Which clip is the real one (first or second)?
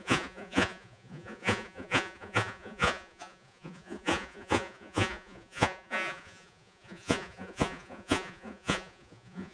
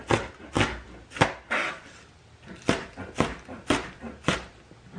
second